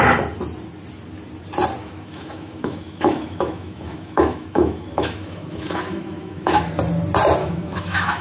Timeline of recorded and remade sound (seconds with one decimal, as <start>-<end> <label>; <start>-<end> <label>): 0.0-1.8 recorded; 1.8-6.7 remade; 6.7-7.4 recorded; 7.4-8.2 remade